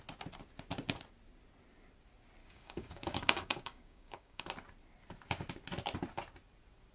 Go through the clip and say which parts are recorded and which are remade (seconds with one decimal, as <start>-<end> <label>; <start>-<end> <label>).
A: 0.0-2.4 recorded; 2.4-4.5 remade; 4.5-6.9 recorded